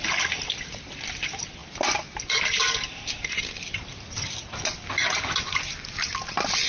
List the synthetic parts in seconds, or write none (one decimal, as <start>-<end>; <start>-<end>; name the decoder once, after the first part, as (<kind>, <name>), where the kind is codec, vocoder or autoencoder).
none